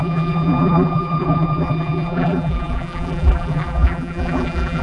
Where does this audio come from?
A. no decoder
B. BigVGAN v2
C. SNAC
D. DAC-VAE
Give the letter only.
B